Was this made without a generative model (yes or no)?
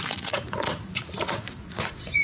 no